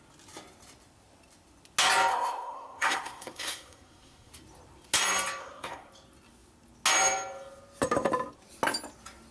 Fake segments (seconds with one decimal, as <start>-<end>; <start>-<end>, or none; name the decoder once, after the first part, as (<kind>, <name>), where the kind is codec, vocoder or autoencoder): 2.1-4.3 (codec, SNAC); 5.4-5.9